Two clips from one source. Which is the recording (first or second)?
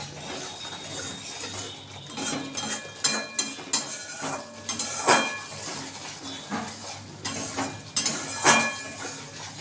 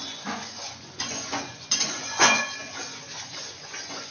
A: first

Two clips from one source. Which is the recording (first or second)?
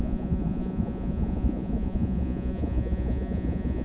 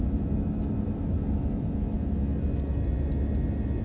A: second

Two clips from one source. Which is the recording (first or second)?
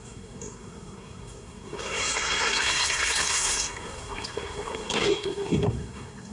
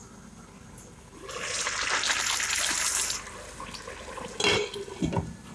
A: second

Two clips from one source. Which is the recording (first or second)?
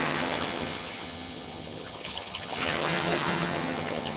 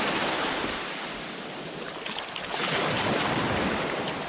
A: second